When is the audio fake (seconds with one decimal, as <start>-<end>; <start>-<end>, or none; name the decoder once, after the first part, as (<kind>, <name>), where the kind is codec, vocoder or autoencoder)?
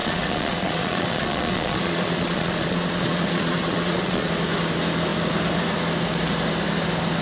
0.0-4.3 (vocoder, Vocos)